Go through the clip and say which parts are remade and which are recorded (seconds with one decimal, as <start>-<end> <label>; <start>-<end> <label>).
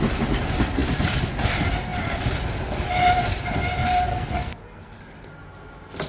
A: 0.0-4.1 recorded; 4.1-5.0 remade; 5.0-6.1 recorded